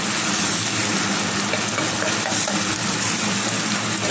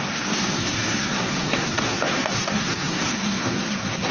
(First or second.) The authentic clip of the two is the first